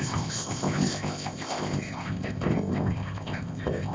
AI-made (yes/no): yes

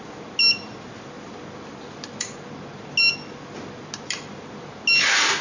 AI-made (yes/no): no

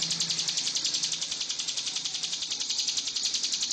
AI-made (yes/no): no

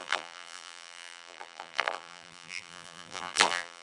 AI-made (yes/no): yes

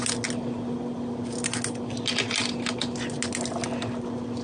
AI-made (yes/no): no